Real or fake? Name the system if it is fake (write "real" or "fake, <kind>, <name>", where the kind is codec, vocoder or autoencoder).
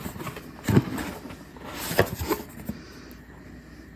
real